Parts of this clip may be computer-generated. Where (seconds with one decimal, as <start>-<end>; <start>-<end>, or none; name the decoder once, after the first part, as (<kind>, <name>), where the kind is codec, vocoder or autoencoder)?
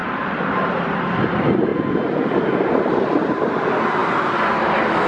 0.0-0.5 (vocoder, BigVGAN v2)